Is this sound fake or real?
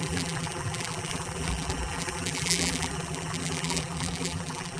fake